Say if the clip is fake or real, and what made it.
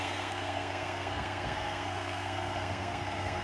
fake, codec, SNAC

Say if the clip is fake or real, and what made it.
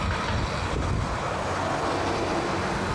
real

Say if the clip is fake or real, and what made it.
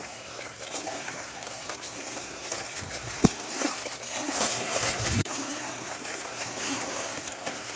fake, codec, SNAC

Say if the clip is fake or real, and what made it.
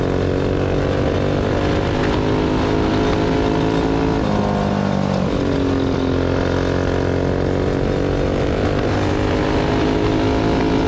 real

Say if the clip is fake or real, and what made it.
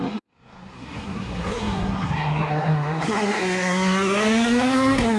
fake, codec, SNAC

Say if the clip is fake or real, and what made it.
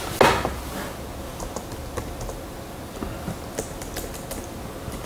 real